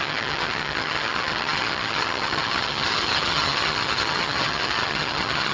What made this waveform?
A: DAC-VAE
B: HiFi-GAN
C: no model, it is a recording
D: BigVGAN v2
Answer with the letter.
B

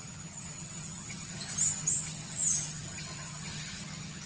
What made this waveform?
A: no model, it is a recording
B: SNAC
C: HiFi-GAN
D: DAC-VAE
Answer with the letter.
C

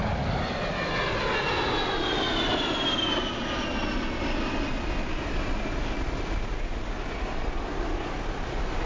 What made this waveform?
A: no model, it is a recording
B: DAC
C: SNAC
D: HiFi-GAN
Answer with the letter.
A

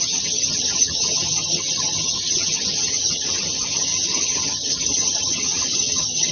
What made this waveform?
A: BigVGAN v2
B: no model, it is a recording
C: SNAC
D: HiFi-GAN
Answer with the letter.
D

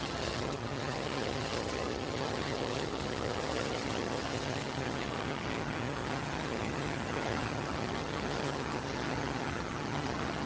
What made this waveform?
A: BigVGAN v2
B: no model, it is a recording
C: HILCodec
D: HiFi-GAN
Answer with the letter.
D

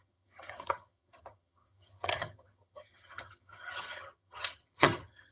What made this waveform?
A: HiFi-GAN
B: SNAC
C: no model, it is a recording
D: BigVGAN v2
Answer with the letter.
A